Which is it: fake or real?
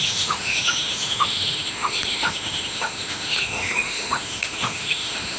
fake